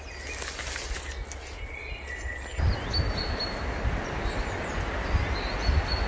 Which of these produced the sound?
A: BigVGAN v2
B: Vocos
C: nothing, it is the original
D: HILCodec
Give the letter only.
C